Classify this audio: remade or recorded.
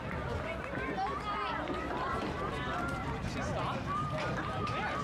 recorded